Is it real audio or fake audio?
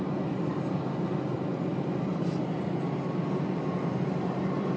fake